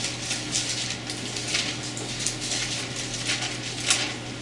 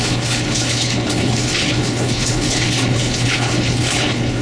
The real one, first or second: first